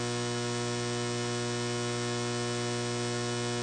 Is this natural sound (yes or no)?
yes